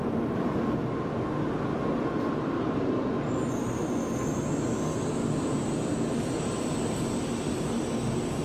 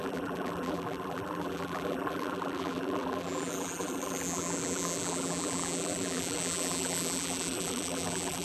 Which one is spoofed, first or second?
second